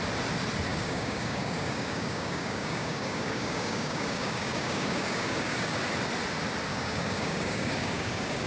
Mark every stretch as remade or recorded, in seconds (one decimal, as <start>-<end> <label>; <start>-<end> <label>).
0.0-0.7 recorded; 0.7-5.8 remade; 5.8-6.7 recorded; 6.7-8.5 remade